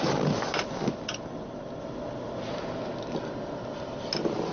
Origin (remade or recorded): recorded